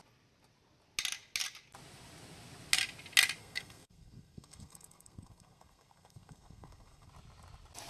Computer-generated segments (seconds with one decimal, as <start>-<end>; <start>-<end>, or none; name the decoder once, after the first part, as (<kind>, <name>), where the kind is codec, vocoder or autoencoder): 3.4-7.1 (codec, SNAC)